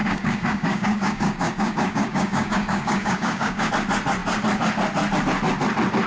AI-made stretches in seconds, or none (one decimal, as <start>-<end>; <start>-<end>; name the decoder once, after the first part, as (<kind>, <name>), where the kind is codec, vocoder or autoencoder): 0.0-3.7 (codec, DAC)